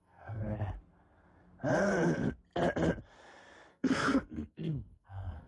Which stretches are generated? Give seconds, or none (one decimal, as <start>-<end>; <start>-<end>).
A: 0.0-0.4; 3.7-5.5